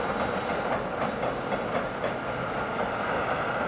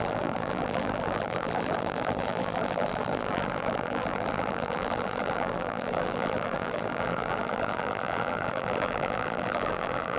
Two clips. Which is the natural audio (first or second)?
first